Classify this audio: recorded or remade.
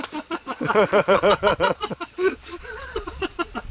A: remade